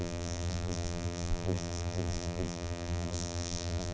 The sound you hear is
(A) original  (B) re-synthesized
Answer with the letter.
B